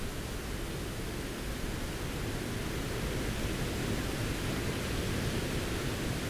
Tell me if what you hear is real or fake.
real